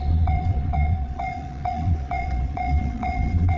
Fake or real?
fake